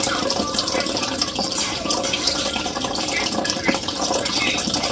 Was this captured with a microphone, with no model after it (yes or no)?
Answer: no